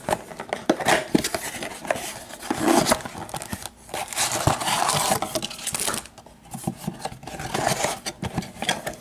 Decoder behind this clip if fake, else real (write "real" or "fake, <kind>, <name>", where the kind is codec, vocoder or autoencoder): real